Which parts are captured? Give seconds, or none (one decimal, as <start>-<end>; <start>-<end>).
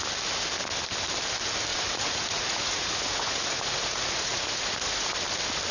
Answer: 0.0-1.7; 5.1-5.7